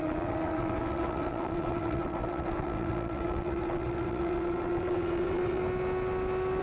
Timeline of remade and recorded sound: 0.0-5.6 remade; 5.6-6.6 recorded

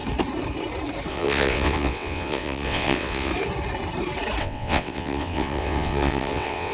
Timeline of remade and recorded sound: 0.0-1.1 recorded; 1.1-3.3 remade; 3.3-4.4 recorded; 4.4-6.7 remade

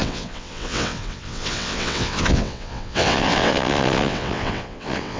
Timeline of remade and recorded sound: 0.0-5.2 remade

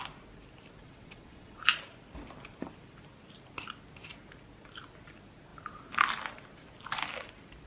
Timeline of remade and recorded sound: 0.0-0.8 recorded; 0.8-1.6 remade; 1.6-7.7 recorded